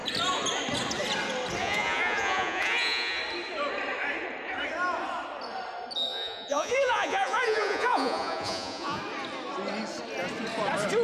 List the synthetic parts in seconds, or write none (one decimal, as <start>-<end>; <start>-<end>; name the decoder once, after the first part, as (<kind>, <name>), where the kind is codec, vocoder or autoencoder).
1.6-3.2 (vocoder, Vocos); 6.1-9.0